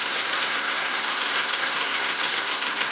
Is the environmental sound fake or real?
fake